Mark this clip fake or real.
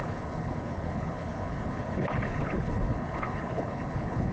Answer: fake